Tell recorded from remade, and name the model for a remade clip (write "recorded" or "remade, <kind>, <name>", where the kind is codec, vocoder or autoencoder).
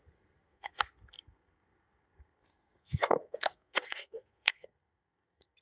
remade, codec, SNAC